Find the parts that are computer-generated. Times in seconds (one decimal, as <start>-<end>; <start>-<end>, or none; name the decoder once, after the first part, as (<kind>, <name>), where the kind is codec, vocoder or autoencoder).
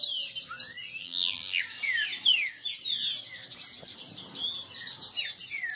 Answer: 1.0-1.6 (vocoder, BigVGAN v2)